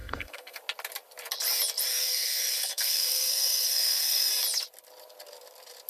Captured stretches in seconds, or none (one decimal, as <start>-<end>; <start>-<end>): 0.6-1.9; 4.3-5.9